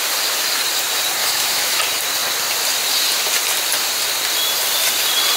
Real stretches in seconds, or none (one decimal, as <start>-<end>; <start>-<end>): 0.0-1.2; 1.8-5.4